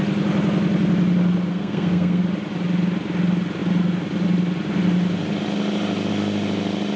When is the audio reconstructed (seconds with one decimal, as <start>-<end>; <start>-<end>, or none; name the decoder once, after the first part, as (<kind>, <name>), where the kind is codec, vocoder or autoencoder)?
1.5-2.2 (codec, SNAC)